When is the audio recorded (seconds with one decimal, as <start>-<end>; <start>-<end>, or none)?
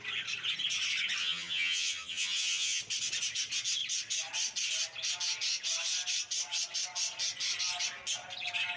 0.0-1.2; 2.8-8.8